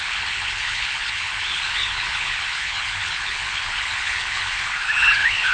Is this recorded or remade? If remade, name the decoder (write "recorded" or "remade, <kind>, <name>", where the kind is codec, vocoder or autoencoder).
remade, codec, HILCodec